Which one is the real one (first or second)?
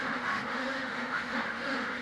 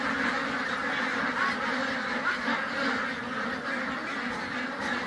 second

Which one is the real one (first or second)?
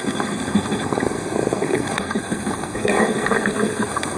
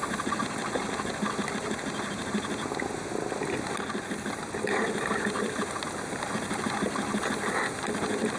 second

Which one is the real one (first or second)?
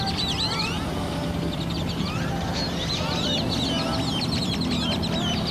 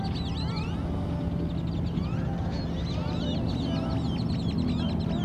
second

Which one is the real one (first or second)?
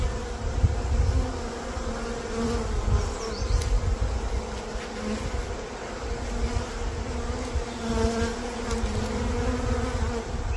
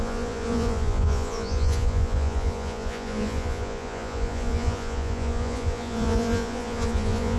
first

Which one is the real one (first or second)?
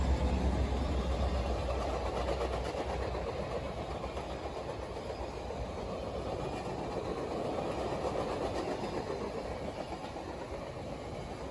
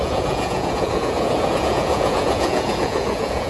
first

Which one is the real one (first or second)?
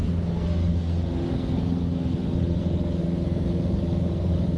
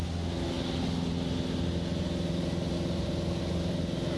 second